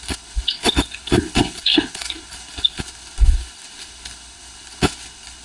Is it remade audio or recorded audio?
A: remade